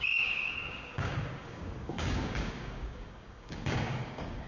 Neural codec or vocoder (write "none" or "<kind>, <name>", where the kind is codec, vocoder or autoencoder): codec, DAC